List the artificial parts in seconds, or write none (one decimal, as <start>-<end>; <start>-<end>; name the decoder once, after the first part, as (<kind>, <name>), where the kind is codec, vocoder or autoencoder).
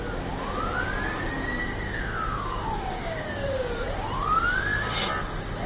1.6-3.6 (codec, DAC)